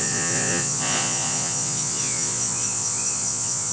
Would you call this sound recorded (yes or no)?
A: no